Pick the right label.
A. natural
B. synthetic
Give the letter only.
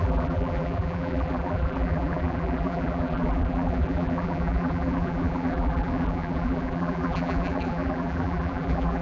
B